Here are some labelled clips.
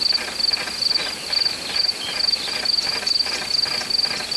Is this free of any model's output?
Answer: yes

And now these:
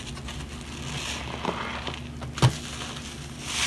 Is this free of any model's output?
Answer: yes